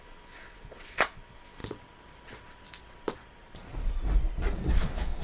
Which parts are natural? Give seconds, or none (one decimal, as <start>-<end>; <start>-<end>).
1.6-4.7